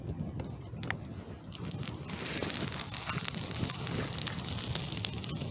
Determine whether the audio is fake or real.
real